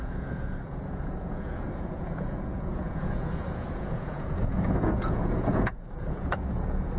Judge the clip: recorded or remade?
remade